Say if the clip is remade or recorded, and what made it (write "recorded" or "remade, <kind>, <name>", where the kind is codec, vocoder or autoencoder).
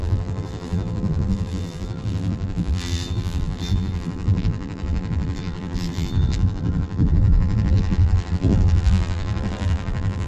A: remade, vocoder, BigVGAN v2